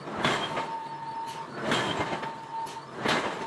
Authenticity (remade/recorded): recorded